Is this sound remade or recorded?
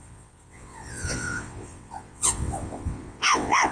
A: remade